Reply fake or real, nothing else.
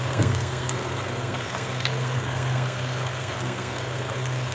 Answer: fake